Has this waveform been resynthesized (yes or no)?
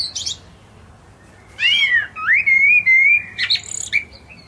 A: no